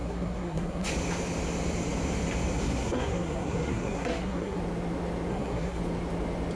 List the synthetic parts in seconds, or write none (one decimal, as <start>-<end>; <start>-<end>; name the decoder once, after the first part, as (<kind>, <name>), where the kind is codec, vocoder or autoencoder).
0.0-0.9 (codec, SNAC); 2.6-4.6; 5.3-5.8